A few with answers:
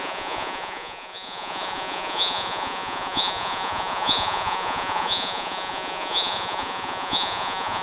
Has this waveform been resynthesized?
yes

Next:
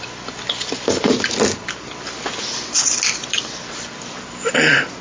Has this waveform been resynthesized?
no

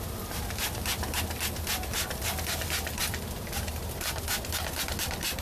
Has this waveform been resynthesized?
no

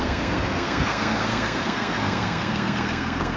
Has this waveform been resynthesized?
yes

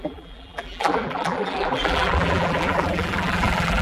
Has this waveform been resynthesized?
yes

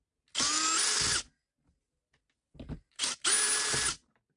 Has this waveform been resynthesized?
no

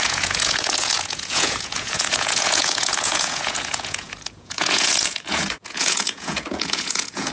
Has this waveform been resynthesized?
yes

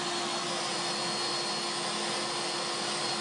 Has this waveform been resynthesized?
no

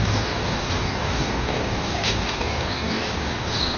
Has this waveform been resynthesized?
yes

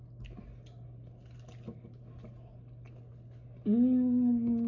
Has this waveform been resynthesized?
no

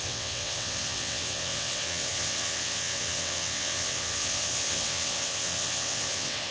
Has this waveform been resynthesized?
yes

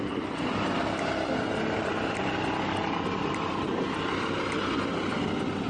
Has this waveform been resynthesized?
no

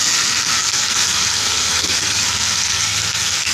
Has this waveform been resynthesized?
yes